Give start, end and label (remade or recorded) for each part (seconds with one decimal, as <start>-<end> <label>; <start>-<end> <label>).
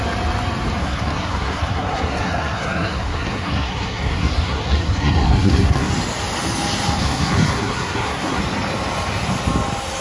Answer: 0.0-0.8 recorded; 0.8-5.9 remade; 5.9-7.0 recorded; 7.0-8.4 remade; 8.4-10.0 recorded